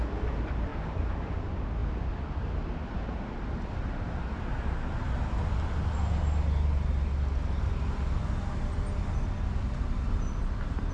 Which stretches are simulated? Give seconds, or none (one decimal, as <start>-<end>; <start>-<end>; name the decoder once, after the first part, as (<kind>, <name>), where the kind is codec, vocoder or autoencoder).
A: none